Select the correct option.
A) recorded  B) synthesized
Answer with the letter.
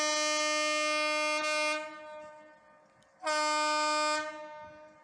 A